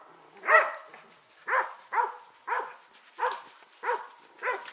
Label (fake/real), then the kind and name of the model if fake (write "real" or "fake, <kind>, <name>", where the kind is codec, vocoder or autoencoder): real